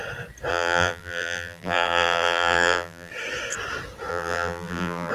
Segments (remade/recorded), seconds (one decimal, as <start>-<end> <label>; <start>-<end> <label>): 0.0-0.5 recorded; 0.5-3.1 remade; 3.1-4.1 recorded; 4.1-5.1 remade